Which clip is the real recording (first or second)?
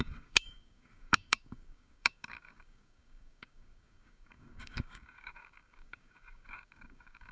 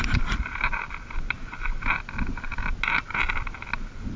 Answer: second